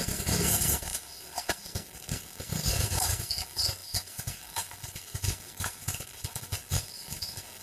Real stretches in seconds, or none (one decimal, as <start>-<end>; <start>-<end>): none